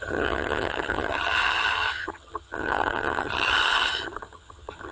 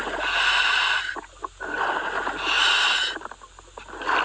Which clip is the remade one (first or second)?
first